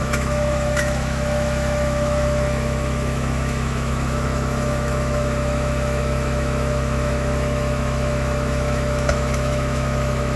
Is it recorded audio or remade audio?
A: remade